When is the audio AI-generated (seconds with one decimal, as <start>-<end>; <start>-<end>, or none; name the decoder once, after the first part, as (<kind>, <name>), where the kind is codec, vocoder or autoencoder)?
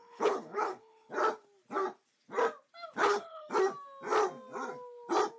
0.0-1.1 (codec, HILCodec); 3.0-3.5